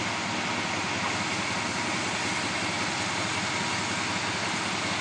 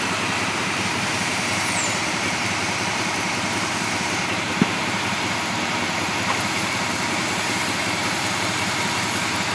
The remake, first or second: second